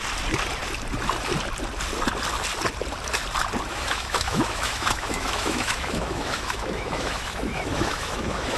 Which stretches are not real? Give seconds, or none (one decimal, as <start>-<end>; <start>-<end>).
3.7-8.6